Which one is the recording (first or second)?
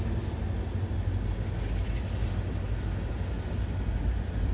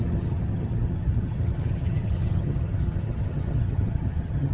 first